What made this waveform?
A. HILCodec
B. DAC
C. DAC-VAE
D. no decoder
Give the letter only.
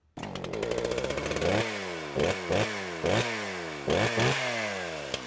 D